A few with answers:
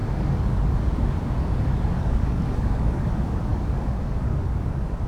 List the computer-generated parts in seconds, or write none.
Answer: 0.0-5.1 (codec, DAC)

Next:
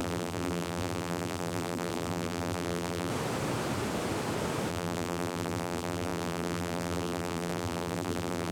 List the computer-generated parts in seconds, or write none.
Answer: 0.0-3.1 (vocoder, BigVGAN v2); 4.7-8.5

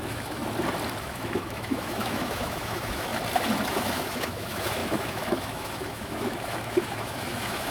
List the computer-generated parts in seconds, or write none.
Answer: 0.0-0.4 (autoencoder, DAC-VAE); 1.0-3.1; 3.7-7.7

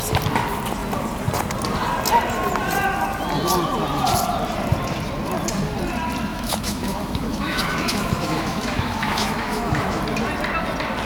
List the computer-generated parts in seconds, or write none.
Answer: 6.3-10.0 (autoencoder, DAC-VAE)

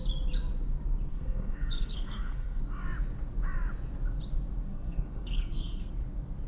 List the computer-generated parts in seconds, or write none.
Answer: 1.1-2.6 (codec, SNAC); 4.7-5.9